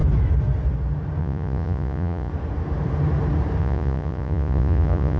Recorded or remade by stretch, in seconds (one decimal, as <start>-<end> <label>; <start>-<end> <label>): 0.0-1.2 recorded; 1.2-2.3 remade; 2.3-3.6 recorded; 3.6-5.2 remade